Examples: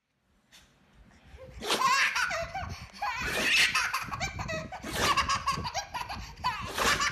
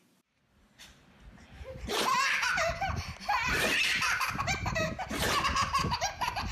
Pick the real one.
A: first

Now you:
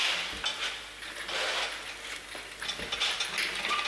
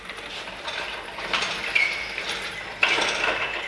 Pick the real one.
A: first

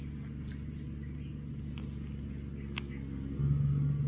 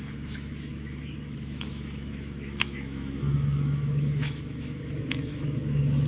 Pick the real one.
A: first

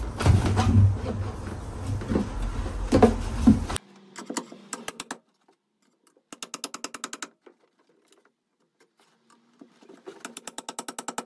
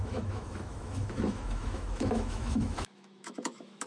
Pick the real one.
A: first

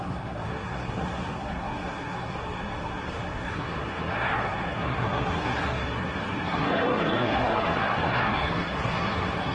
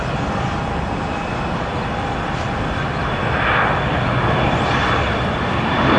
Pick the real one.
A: second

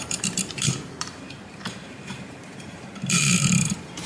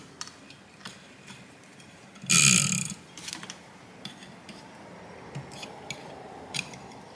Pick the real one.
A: second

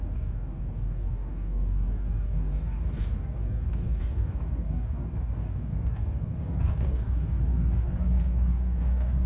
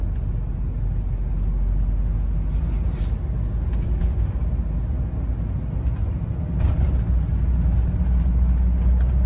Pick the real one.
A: second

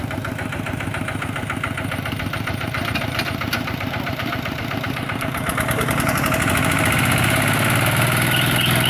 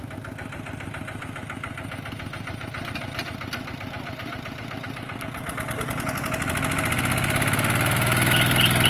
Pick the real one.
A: second